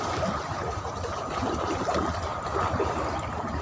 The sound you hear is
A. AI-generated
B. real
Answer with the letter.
A